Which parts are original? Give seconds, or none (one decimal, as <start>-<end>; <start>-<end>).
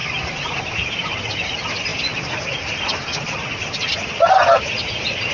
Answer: 1.2-5.3